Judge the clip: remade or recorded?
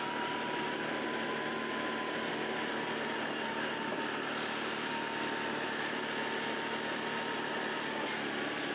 recorded